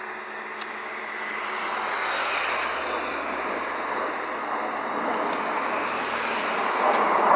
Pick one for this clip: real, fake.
real